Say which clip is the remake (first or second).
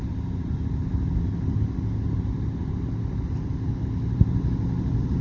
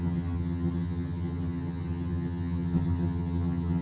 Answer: second